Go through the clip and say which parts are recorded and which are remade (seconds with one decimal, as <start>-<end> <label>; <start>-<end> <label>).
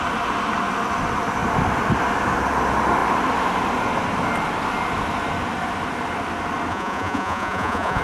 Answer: 0.0-6.7 recorded; 6.7-8.0 remade